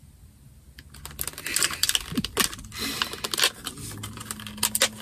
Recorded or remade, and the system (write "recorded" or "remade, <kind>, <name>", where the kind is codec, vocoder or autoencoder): recorded